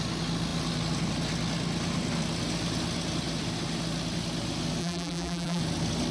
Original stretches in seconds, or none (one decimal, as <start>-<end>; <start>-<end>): 0.0-4.8; 5.6-6.1